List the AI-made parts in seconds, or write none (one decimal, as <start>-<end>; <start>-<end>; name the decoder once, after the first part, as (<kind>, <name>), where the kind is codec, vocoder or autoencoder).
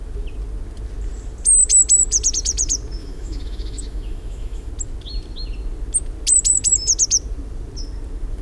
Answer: 3.0-4.7 (autoencoder, DAC-VAE)